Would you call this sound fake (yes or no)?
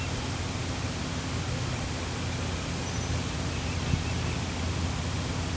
no